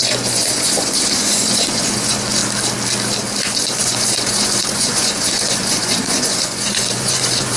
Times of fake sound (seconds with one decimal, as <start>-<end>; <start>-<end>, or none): 0.0-2.4; 3.4-7.6